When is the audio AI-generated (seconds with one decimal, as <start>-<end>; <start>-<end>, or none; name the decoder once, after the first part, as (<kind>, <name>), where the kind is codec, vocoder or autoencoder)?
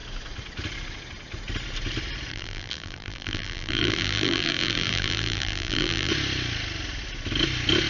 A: 2.3-6.1 (vocoder, BigVGAN v2)